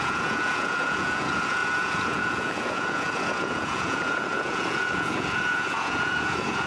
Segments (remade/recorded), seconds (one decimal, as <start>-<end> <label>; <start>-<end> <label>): 0.0-6.7 remade